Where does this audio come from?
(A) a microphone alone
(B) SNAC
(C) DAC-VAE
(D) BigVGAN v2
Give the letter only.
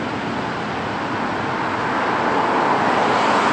A